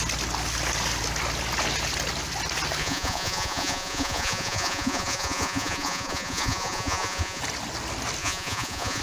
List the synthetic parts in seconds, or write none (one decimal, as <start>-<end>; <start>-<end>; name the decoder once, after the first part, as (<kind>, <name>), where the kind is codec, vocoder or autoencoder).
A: 2.8-7.4 (vocoder, Vocos); 8.2-9.0